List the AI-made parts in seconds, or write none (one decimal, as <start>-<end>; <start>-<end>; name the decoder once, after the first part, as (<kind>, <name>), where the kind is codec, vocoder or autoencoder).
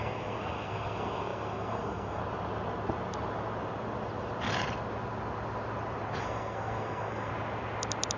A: 0.0-2.2 (codec, SNAC); 6.2-7.3